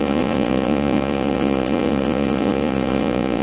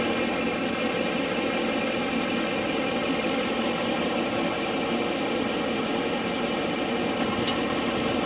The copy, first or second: first